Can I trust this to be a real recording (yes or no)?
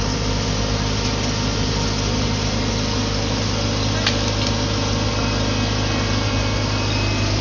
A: yes